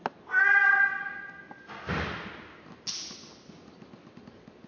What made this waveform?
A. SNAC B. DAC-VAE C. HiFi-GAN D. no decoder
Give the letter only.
D